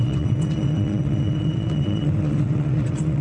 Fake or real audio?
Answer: fake